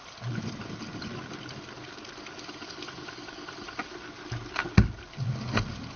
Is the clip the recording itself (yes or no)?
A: yes